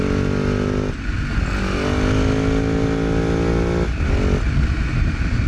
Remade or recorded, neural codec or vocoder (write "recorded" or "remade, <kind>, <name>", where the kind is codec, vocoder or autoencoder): recorded